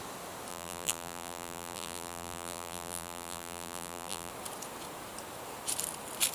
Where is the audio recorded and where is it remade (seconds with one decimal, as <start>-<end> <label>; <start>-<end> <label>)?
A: 0.0-0.5 recorded; 0.5-4.3 remade; 4.3-6.3 recorded